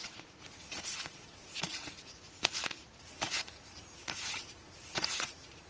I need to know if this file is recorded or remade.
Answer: remade